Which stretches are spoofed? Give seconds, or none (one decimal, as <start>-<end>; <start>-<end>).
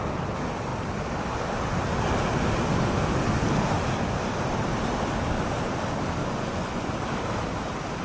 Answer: 6.2-6.9